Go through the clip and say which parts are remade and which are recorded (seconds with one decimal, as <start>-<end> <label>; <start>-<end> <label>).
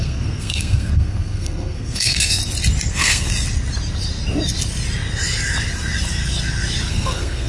0.0-2.4 remade; 2.4-2.9 recorded; 2.9-3.3 remade; 3.3-6.9 recorded; 6.9-7.5 remade